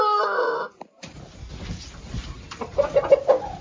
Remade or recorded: recorded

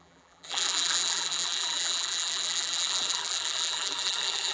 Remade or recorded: remade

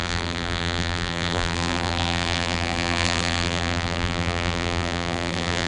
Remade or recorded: remade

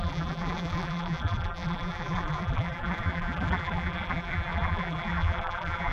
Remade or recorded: remade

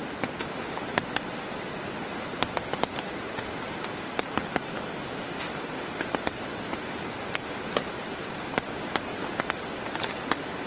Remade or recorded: recorded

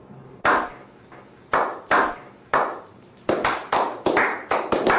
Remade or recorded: remade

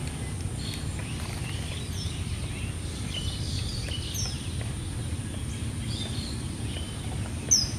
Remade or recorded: recorded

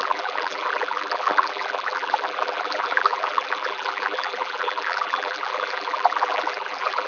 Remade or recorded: remade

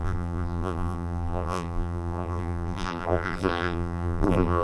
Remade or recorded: remade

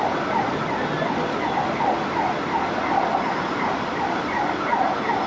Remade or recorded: recorded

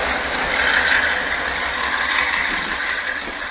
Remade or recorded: recorded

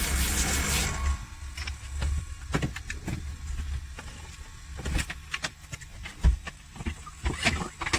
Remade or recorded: recorded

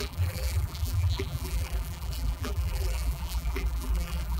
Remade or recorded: remade